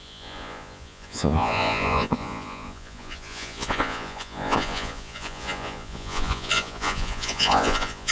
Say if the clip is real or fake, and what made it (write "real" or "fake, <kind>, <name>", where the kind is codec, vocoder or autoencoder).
fake, vocoder, Vocos